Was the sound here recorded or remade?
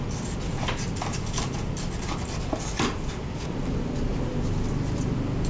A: recorded